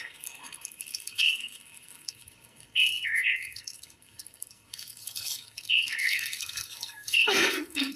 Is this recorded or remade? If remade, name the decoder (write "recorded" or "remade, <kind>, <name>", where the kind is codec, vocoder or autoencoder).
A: remade, codec, SNAC